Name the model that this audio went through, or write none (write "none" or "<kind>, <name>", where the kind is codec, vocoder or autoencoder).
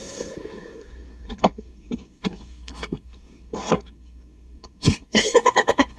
codec, SNAC